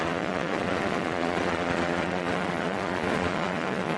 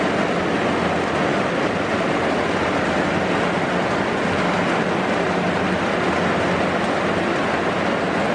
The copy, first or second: first